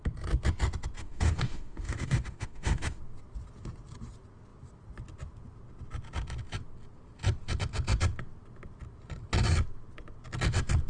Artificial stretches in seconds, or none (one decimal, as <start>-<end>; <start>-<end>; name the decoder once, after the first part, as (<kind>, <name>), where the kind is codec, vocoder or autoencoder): 1.0-3.0 (autoencoder, DAC-VAE)